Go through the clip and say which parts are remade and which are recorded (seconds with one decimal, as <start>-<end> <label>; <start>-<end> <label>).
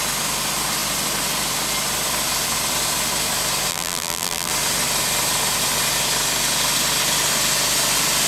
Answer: 0.0-3.7 recorded; 3.7-4.5 remade; 4.5-8.3 recorded